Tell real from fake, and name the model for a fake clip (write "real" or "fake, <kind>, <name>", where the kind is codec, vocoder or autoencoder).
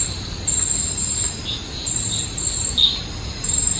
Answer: real